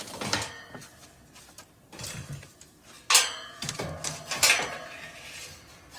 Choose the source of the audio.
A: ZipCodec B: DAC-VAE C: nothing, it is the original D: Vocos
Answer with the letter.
C